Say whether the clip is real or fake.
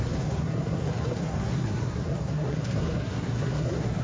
fake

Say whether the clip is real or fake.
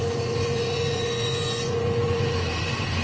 fake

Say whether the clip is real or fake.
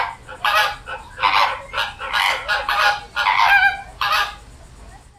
real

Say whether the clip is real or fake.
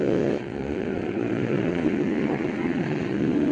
fake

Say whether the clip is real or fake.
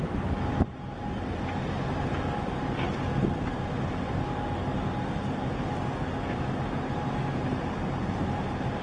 real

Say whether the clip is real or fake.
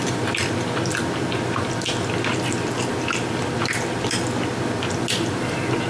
real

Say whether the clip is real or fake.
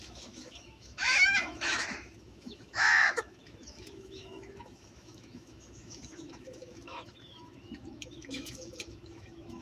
fake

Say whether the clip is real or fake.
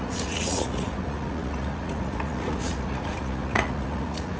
fake